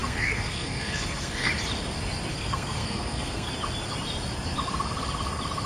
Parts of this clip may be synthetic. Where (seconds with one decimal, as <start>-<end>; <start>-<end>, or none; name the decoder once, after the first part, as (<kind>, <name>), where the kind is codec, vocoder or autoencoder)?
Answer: 0.0-1.5 (codec, SNAC); 2.3-3.5